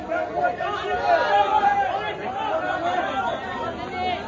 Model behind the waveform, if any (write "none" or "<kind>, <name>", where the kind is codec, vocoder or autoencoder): none